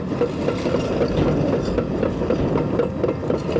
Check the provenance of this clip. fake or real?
real